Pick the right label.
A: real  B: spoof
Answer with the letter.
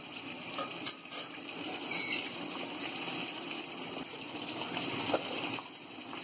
A